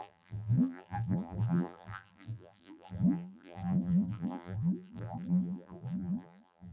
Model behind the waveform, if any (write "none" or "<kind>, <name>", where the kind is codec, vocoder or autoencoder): vocoder, BigVGAN v2